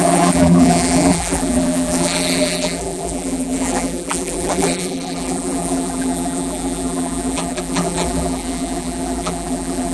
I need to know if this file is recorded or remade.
remade